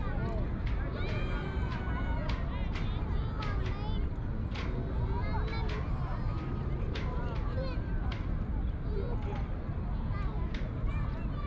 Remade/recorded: recorded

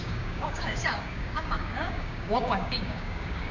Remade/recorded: remade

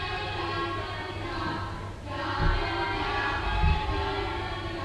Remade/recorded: recorded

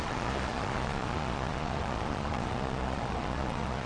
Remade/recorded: remade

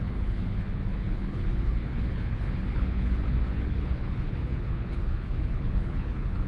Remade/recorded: remade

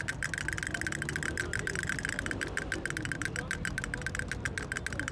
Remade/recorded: recorded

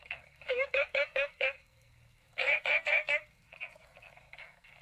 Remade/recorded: remade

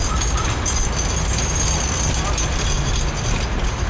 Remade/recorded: recorded